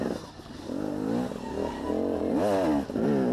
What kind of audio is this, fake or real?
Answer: real